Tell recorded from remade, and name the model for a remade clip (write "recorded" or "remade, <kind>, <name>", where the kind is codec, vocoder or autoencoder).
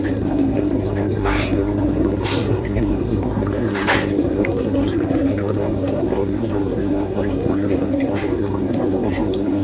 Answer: remade, codec, SNAC